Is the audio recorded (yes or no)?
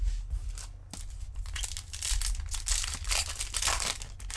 yes